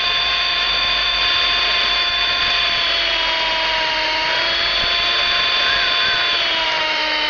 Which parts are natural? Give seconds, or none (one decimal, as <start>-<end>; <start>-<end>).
1.2-1.9; 2.4-6.8